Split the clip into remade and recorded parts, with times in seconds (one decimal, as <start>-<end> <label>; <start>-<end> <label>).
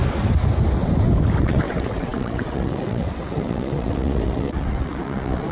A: 0.0-1.4 recorded; 1.4-5.5 remade